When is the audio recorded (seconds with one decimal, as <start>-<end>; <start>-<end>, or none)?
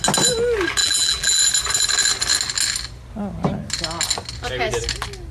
0.0-0.8; 1.4-5.3